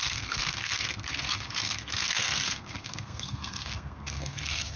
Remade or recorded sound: remade